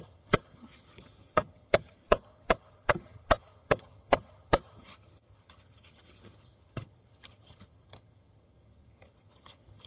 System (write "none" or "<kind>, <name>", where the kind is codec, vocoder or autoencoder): vocoder, HiFi-GAN